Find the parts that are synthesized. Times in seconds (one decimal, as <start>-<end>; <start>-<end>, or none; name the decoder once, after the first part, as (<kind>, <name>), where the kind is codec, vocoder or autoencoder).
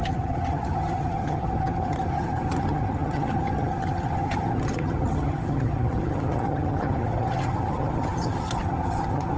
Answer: 0.0-9.4 (vocoder, HiFi-GAN)